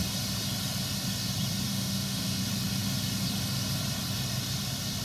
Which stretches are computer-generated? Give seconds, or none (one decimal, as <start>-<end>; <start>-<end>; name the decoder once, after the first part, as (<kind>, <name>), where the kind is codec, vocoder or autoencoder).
1.7-2.4 (autoencoder, DAC-VAE)